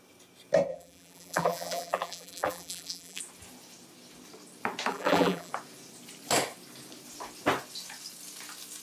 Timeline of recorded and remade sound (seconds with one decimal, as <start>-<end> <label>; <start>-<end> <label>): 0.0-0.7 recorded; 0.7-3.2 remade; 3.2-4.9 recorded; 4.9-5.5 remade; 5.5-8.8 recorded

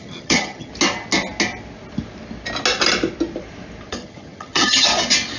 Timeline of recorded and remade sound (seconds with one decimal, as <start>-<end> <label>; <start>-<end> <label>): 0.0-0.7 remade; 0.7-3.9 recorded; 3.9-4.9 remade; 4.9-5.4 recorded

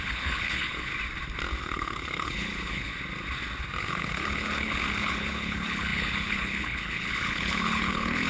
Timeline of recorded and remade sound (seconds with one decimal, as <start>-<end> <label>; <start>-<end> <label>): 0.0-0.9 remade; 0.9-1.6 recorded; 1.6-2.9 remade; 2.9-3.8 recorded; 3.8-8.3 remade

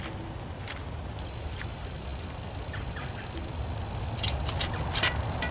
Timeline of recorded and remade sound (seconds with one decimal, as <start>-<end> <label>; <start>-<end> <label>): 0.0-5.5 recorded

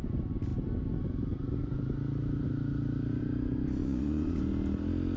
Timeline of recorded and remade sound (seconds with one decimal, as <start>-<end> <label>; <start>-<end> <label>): 0.0-3.8 recorded; 3.8-4.4 remade; 4.4-5.2 recorded

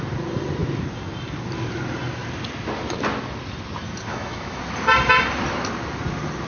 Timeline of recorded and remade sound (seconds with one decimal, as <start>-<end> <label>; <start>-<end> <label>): 0.0-4.1 recorded; 4.1-4.6 remade; 4.6-6.5 recorded

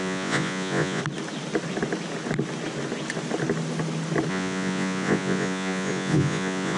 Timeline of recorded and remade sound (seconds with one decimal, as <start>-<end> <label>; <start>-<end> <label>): 0.0-1.0 remade; 1.0-4.3 recorded; 4.3-6.8 remade